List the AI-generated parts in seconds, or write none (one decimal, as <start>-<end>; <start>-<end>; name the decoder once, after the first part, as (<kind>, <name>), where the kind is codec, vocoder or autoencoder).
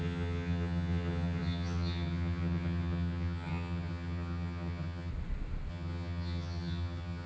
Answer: 0.0-5.1 (vocoder, HiFi-GAN); 5.7-7.3